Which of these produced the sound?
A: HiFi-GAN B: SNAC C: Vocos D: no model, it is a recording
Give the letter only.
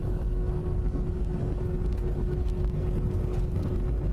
B